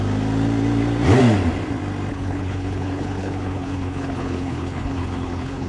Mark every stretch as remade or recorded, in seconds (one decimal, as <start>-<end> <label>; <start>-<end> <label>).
0.0-2.1 recorded; 2.1-5.7 remade